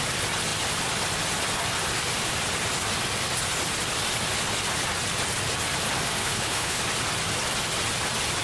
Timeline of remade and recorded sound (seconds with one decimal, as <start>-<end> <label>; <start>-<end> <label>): 0.0-6.2 recorded; 6.2-6.8 remade; 6.8-8.4 recorded